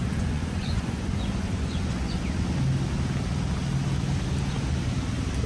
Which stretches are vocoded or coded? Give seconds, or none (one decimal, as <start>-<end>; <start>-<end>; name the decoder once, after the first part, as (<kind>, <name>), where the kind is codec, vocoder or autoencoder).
0.0-2.2 (vocoder, Vocos)